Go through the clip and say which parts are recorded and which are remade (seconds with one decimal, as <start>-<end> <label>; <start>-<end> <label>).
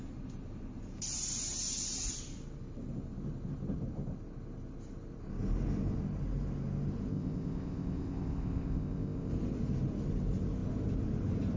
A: 0.0-7.1 recorded; 7.1-9.3 remade; 9.3-11.6 recorded